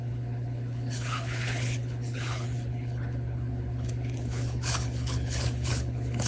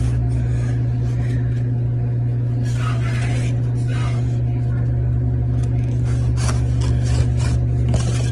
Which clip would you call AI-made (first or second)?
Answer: first